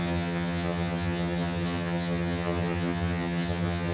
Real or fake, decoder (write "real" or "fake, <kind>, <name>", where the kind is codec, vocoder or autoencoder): fake, vocoder, HiFi-GAN